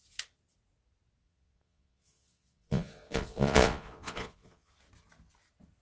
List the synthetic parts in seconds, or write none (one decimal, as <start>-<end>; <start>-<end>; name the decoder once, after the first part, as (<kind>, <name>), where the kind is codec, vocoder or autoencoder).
1.2-4.7 (vocoder, Vocos)